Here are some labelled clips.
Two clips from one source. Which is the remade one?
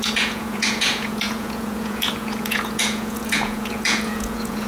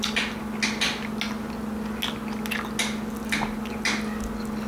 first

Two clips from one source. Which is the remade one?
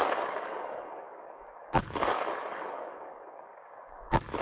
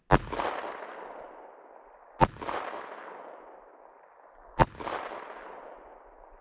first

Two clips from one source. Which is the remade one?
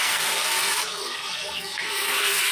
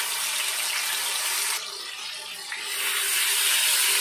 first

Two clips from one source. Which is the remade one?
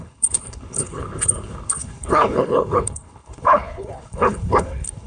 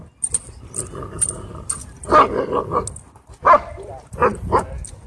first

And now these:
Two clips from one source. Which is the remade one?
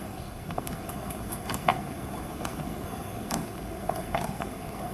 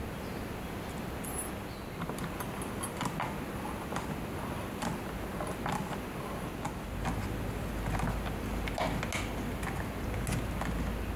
first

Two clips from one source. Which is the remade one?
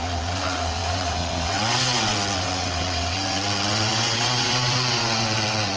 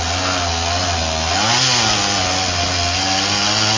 first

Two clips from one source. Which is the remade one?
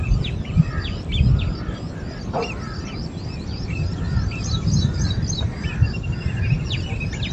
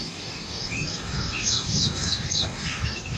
second